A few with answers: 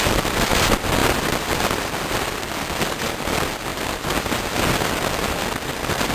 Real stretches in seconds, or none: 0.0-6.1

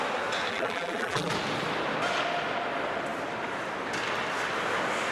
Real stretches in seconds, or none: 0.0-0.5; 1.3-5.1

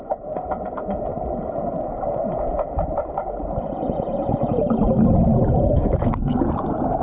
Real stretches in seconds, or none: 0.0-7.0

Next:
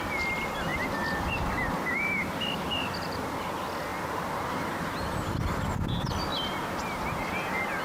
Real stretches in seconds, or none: 0.0-0.7; 3.5-6.3

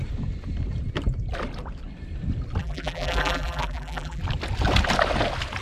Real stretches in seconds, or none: 0.0-2.6; 4.2-5.6